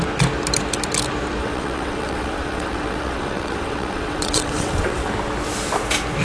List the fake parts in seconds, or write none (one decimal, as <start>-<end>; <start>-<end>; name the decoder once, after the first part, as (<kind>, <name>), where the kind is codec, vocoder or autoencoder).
1.4-5.1 (vocoder, WaveNeXt)